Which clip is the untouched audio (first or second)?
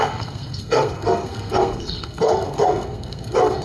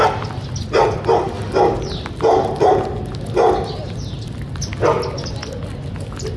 second